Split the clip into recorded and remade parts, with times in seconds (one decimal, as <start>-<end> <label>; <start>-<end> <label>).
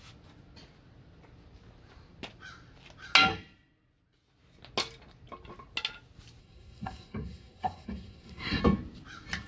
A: 0.0-6.4 recorded; 6.4-8.6 remade; 8.6-9.5 recorded